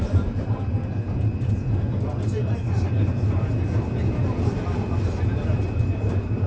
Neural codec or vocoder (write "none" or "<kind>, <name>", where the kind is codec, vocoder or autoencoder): vocoder, BigVGAN v2